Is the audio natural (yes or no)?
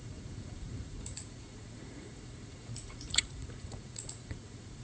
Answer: no